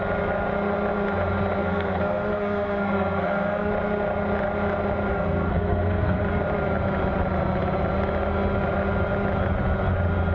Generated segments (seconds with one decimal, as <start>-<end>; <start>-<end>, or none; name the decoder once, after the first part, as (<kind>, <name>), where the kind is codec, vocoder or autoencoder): 1.6-3.7 (codec, SNAC); 5.1-6.2